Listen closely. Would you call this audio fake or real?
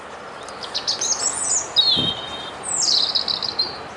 real